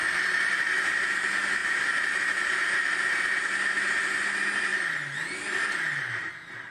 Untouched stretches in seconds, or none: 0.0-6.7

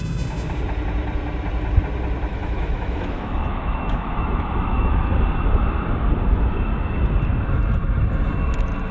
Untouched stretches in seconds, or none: 0.0-2.3; 4.9-8.9

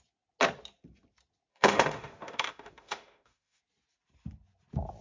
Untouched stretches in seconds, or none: 0.0-1.5; 3.6-5.0

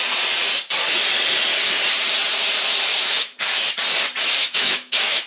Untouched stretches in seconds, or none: 0.0-2.9; 3.6-4.4